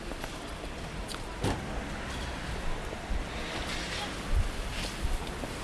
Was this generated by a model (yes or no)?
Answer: no